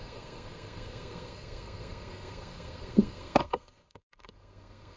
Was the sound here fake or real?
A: fake